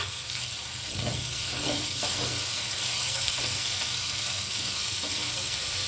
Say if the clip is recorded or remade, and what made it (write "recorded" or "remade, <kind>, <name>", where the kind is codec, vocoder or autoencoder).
remade, codec, SNAC